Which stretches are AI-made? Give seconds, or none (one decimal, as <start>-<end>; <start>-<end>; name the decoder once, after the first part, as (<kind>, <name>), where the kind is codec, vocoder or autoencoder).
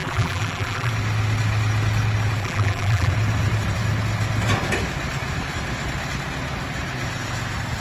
0.0-0.9 (vocoder, BigVGAN v2); 2.4-3.1